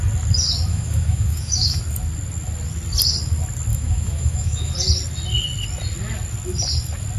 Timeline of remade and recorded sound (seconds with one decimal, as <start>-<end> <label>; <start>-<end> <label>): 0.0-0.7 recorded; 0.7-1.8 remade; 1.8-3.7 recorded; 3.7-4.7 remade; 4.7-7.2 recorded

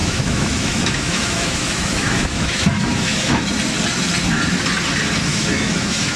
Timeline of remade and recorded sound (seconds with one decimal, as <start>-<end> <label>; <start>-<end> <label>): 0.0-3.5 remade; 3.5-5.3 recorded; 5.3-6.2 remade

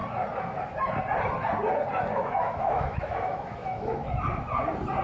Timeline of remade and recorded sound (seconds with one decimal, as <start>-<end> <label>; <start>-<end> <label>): 0.0-2.1 recorded; 2.1-4.1 remade; 4.1-5.0 recorded

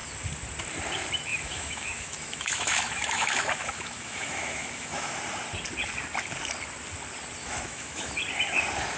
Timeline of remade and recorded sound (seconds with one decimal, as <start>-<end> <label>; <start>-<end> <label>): 0.0-1.3 recorded; 1.3-5.2 remade; 5.2-7.4 recorded; 7.4-8.1 remade; 8.1-9.0 recorded

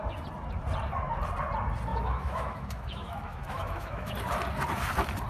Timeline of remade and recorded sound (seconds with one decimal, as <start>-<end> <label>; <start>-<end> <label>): 0.0-1.9 recorded; 1.9-4.1 remade; 4.1-5.3 recorded

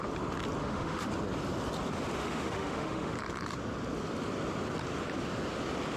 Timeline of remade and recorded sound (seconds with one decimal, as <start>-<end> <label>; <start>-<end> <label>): 0.0-0.6 recorded; 0.6-1.1 remade; 1.1-2.2 recorded; 2.2-3.1 remade; 3.1-6.0 recorded